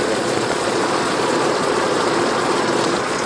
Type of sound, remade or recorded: remade